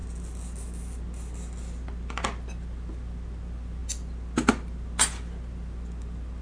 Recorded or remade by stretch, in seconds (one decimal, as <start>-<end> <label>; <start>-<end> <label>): 0.0-6.4 recorded

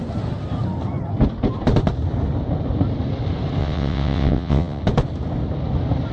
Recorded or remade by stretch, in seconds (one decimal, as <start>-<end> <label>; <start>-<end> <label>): 0.0-3.6 recorded; 3.6-4.8 remade; 4.8-6.1 recorded

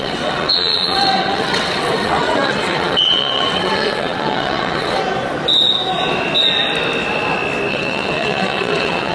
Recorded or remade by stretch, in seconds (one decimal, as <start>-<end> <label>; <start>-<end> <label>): 0.0-5.0 remade; 5.0-7.7 recorded; 7.7-9.1 remade

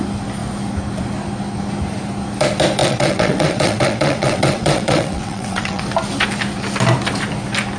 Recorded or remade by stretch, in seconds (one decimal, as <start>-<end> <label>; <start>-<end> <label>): 0.0-2.8 recorded; 2.8-5.8 remade; 5.8-7.8 recorded

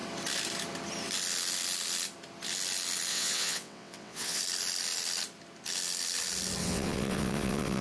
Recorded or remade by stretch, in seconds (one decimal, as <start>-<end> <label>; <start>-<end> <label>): 0.0-3.1 recorded; 3.1-4.4 remade; 4.4-6.6 recorded; 6.6-7.8 remade

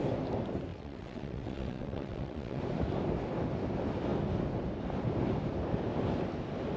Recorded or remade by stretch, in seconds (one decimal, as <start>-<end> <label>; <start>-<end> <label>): 0.0-0.7 recorded; 0.7-2.6 remade; 2.6-6.8 recorded

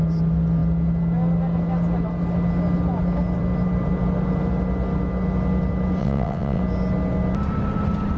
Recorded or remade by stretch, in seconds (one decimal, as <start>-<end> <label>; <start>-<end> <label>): 0.0-6.0 recorded; 6.0-6.6 remade; 6.6-8.2 recorded